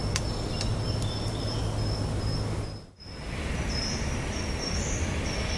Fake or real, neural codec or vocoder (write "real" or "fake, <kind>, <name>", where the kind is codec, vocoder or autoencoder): real